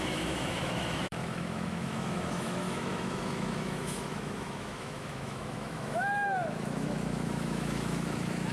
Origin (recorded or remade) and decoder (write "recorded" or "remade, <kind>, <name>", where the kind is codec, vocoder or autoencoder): remade, autoencoder, DAC-VAE